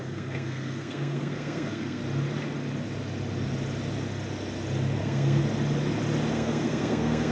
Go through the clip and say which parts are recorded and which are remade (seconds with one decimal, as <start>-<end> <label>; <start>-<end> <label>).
0.0-2.0 remade; 2.0-5.0 recorded; 5.0-5.4 remade; 5.4-6.3 recorded; 6.3-7.3 remade